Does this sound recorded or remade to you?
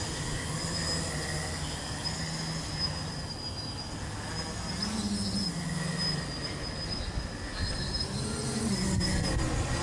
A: recorded